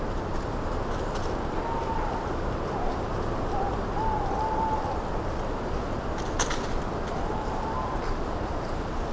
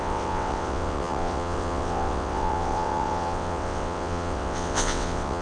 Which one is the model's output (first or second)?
second